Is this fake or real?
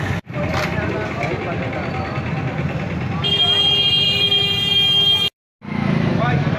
real